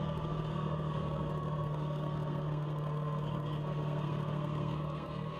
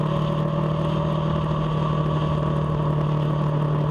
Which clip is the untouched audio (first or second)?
second